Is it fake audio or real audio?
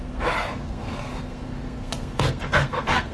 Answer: fake